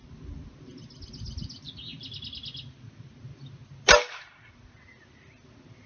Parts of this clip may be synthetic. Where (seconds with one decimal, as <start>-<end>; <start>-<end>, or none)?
none